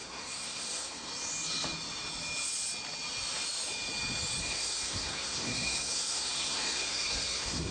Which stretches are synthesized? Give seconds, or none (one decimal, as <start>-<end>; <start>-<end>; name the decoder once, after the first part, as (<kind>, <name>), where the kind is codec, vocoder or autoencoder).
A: 0.0-1.1 (codec, SNAC); 4.4-7.7

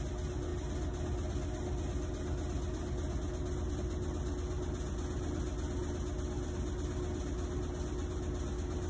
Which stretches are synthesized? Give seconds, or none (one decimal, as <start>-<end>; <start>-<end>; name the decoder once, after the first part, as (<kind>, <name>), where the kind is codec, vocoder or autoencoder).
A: none

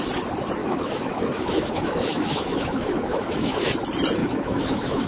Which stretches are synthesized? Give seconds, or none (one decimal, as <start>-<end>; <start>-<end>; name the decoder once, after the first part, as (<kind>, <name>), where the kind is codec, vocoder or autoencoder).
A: 0.6-3.7 (autoencoder, DAC-VAE); 4.2-5.1

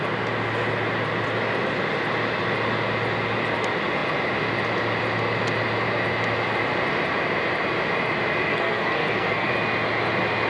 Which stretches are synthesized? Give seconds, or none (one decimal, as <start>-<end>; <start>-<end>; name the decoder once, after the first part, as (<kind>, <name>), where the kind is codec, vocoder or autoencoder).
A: 8.5-9.5 (codec, SNAC)

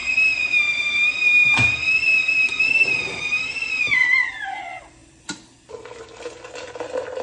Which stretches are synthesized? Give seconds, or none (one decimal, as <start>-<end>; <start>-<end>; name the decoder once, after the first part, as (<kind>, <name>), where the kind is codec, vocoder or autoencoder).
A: none

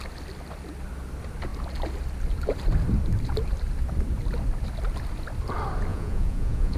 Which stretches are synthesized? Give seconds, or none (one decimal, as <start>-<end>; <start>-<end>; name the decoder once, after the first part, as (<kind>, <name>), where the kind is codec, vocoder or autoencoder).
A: 5.9-6.8 (vocoder, Vocos)

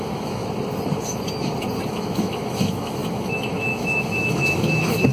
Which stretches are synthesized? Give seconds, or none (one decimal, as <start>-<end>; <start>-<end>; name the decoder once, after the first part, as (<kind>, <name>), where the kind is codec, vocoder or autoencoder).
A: 0.0-0.4 (autoencoder, DAC-VAE); 1.9-5.1

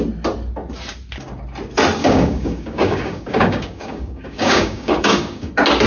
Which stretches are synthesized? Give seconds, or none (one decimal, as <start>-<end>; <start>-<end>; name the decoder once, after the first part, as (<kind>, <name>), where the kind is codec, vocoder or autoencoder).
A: 2.0-5.5 (codec, DAC)